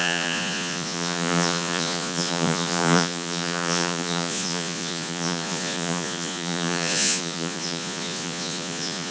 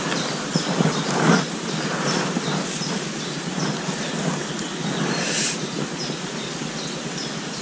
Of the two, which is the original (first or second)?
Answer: second